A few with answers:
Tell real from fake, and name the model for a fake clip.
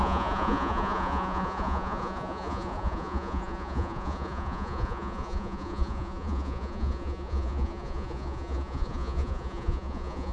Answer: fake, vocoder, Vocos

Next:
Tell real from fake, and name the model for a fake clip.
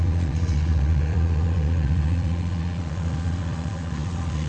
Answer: fake, vocoder, Vocos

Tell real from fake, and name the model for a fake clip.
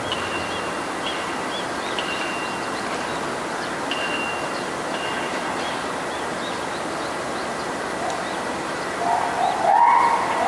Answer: real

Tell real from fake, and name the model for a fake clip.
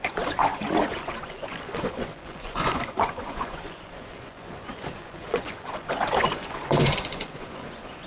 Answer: fake, vocoder, Vocos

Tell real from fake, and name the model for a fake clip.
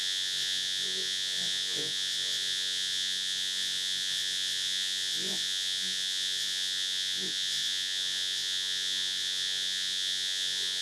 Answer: fake, vocoder, Vocos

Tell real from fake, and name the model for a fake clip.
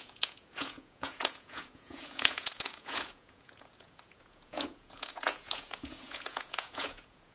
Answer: fake, vocoder, Vocos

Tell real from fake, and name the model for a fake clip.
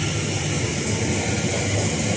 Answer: real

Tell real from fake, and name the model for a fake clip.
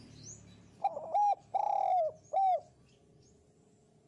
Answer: real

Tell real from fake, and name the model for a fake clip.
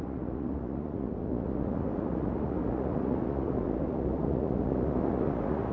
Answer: fake, vocoder, Vocos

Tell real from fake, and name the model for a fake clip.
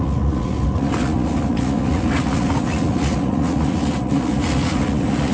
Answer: fake, vocoder, Vocos